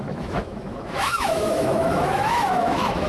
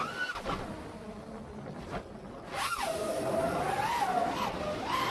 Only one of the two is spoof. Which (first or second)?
first